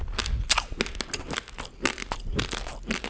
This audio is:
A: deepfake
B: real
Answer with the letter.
B